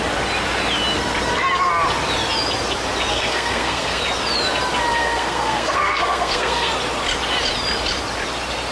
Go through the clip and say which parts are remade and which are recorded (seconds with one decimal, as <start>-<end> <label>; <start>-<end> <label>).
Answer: 0.0-3.1 recorded; 3.1-4.0 remade; 4.0-4.9 recorded; 4.9-6.7 remade; 6.7-8.7 recorded